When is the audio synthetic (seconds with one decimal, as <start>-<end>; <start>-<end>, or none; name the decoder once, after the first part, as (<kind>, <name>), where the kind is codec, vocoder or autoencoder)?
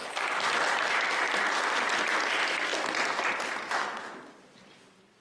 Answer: 0.0-5.2 (vocoder, BigVGAN v2)